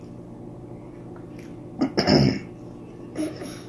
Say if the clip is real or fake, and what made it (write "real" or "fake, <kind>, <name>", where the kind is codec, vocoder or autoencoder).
real